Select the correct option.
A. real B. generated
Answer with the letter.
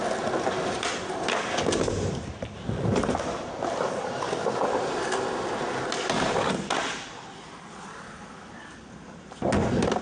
A